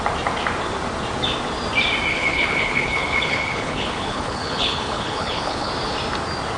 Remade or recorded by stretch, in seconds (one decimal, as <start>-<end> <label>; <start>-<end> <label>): 0.0-2.1 recorded; 2.1-5.7 remade; 5.7-6.6 recorded